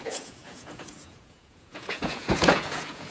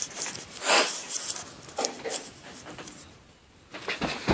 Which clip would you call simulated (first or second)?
first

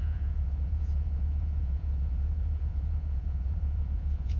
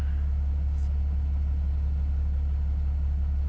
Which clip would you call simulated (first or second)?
first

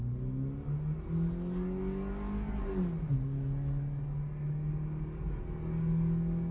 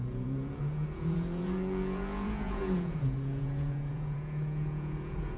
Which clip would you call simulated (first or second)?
second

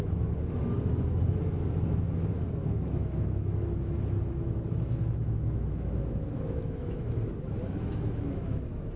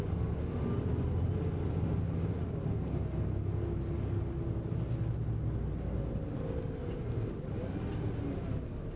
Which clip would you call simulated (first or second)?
first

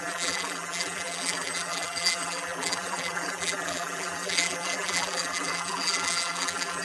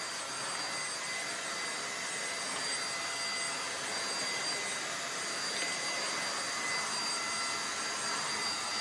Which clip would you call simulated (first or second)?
first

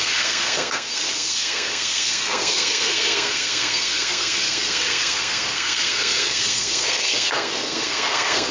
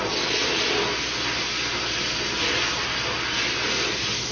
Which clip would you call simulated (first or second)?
first